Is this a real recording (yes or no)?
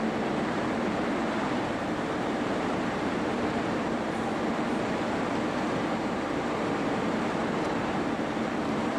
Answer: no